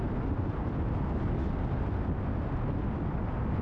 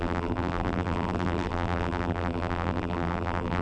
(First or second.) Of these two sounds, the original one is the first